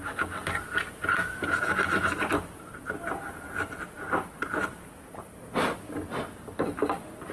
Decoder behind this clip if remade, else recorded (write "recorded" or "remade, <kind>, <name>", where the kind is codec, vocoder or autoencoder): recorded